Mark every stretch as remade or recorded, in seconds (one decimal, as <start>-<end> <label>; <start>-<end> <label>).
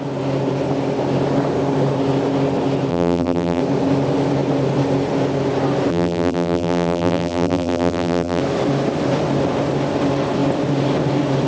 0.0-2.9 recorded; 2.9-3.6 remade; 3.6-5.9 recorded; 5.9-8.4 remade; 8.4-11.5 recorded